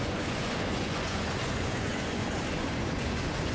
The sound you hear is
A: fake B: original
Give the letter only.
A